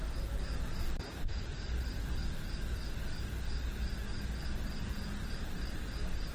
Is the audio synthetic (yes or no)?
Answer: no